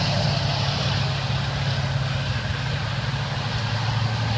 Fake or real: real